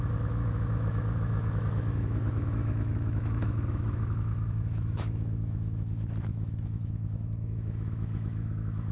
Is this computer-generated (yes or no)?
yes